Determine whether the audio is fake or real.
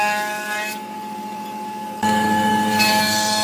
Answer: fake